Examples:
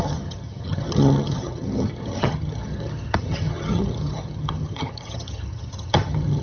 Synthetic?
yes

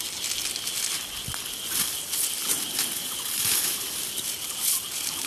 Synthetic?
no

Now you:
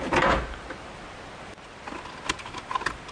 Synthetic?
no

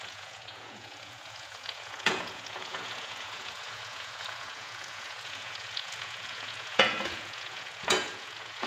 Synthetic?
yes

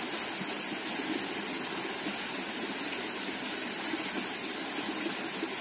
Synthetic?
no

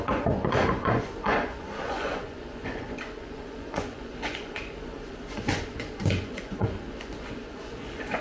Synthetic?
yes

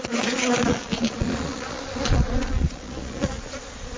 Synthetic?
yes